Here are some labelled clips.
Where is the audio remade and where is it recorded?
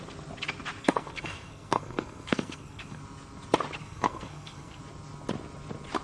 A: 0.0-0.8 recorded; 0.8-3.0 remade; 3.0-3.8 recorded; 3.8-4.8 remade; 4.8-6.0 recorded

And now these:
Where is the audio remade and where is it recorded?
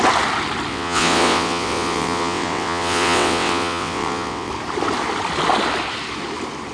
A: 0.0-0.7 recorded; 0.7-4.5 remade; 4.5-6.7 recorded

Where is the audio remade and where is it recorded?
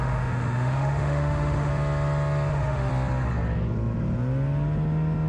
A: 0.0-1.7 remade; 1.7-2.5 recorded; 2.5-2.9 remade; 2.9-5.3 recorded